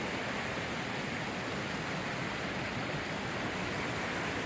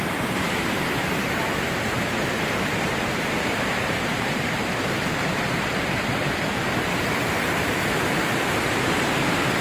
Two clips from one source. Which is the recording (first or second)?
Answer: first